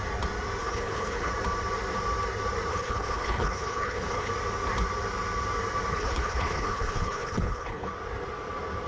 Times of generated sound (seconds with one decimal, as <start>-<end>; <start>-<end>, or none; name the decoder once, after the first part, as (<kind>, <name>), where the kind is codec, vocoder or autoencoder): 0.6-1.3 (codec, HILCodec); 2.7-4.3; 5.9-7.9